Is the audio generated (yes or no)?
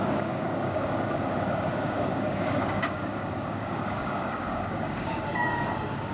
yes